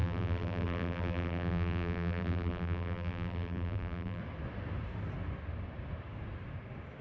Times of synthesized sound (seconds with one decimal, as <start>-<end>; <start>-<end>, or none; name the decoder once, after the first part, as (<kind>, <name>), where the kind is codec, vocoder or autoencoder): 0.0-4.2 (vocoder, BigVGAN v2)